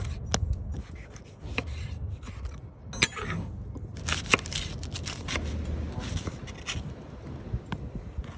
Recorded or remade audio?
recorded